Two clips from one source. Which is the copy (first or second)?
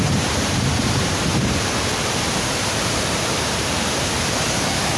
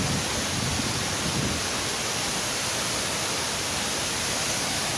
first